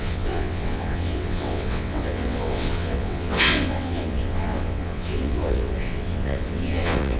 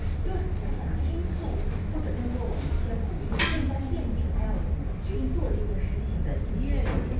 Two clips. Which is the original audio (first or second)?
second